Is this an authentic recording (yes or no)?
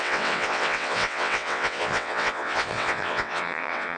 no